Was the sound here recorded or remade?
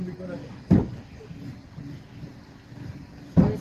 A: recorded